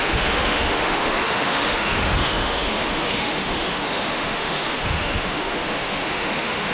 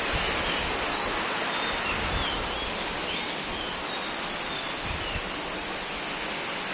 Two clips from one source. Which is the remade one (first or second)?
first